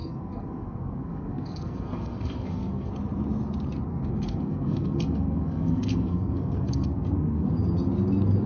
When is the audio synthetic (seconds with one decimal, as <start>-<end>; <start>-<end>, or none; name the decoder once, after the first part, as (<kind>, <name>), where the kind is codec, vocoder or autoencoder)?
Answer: 0.0-2.9 (codec, SNAC); 3.9-7.5